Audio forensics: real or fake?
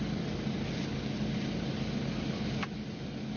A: real